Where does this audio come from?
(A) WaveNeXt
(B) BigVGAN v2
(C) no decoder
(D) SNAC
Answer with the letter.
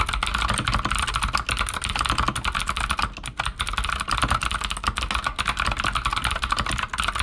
C